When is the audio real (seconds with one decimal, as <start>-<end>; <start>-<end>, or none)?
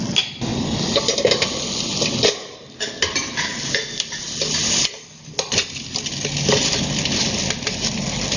0.0-8.4